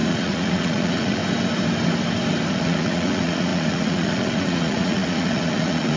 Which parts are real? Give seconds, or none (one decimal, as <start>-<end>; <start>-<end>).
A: 1.2-2.5